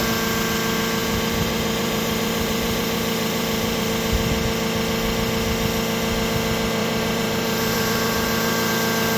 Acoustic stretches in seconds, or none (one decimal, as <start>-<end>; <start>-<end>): 0.0-1.0; 3.9-6.8; 8.7-9.2